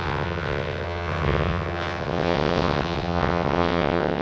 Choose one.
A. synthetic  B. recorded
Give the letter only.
A